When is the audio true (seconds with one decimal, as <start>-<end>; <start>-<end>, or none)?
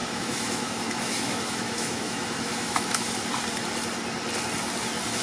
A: 3.1-5.2